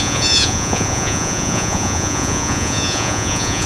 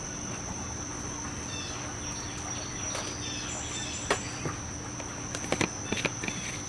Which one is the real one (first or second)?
second